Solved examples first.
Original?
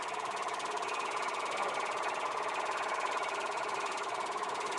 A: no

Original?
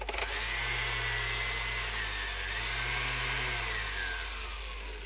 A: yes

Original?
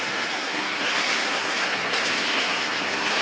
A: no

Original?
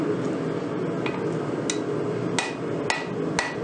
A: yes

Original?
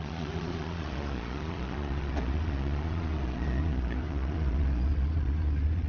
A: no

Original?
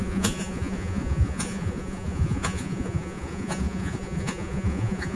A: no